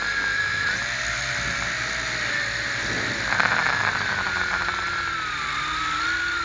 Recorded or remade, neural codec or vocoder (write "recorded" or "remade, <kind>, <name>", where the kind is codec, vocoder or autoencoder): recorded